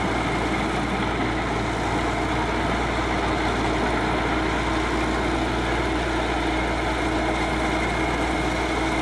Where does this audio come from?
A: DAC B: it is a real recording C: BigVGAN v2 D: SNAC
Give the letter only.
B